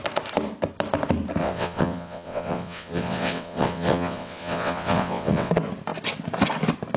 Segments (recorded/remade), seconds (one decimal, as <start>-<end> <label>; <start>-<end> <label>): 0.0-1.4 recorded; 1.4-5.5 remade; 5.5-7.0 recorded

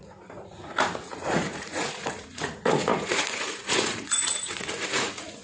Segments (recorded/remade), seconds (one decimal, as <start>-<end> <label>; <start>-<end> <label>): 0.0-5.4 remade